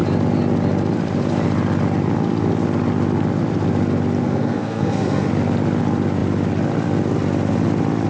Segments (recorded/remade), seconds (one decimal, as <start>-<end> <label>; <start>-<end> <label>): 0.0-4.2 recorded; 4.2-5.3 remade; 5.3-8.1 recorded